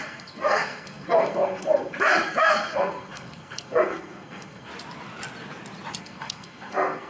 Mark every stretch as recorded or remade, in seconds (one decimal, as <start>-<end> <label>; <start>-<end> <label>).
0.0-4.7 remade; 4.7-6.0 recorded; 6.0-7.1 remade